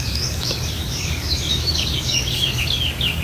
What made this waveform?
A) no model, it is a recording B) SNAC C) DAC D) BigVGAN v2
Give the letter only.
C